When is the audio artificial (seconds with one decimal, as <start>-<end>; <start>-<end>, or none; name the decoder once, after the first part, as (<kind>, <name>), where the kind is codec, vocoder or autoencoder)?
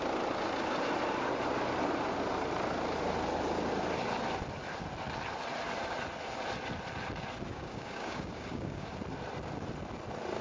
7.5-8.9 (codec, DAC)